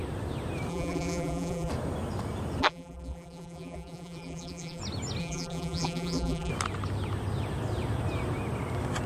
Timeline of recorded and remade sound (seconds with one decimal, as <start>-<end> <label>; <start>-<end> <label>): 0.0-0.7 recorded; 0.7-1.7 remade; 1.7-2.6 recorded; 2.6-4.8 remade; 4.8-5.2 recorded; 5.2-6.5 remade; 6.5-9.1 recorded